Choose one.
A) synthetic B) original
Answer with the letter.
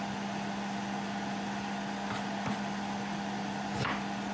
B